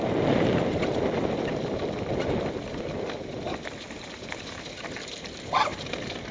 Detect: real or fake real